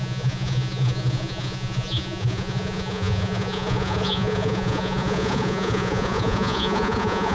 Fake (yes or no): yes